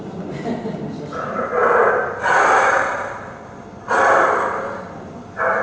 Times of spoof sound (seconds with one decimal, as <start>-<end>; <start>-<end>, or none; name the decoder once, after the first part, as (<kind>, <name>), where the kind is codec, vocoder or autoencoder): 0.0-5.6 (vocoder, BigVGAN v2)

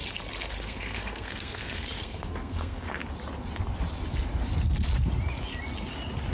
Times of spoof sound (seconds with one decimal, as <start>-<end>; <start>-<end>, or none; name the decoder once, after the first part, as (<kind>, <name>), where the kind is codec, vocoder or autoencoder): 0.6-3.0 (codec, SNAC)

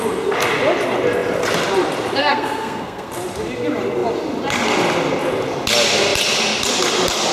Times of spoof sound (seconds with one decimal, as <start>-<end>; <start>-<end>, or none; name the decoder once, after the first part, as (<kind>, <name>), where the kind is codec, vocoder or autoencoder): 2.2-3.1 (codec, SNAC)

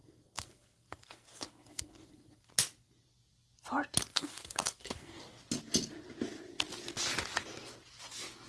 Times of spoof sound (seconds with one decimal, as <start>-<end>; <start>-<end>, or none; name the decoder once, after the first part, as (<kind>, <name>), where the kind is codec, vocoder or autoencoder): 0.0-2.5 (codec, SNAC); 4.1-5.2